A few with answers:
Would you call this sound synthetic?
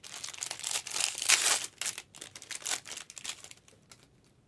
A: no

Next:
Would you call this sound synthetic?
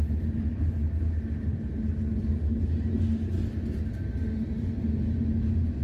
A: no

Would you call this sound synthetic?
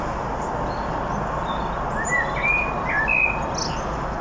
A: no